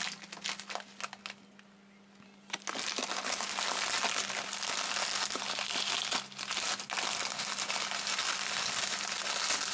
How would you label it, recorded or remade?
recorded